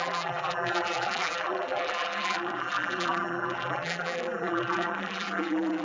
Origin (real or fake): fake